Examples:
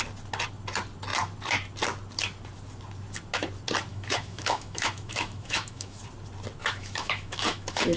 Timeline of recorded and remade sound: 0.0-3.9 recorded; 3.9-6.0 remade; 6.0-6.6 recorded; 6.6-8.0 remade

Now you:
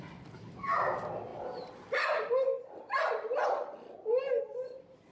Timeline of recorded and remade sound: 0.0-5.1 recorded